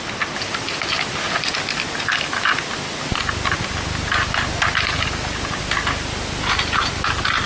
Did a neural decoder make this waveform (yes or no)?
no